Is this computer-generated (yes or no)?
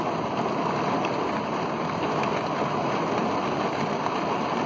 no